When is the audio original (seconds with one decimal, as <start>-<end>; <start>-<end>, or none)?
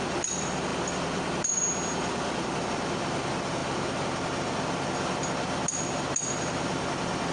0.0-7.3